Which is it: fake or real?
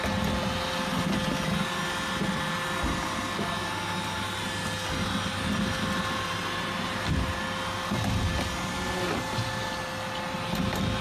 real